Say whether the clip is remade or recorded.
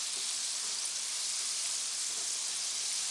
remade